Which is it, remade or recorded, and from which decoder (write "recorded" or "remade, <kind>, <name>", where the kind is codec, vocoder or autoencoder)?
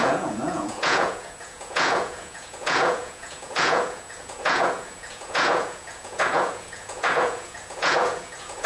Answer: remade, vocoder, Vocos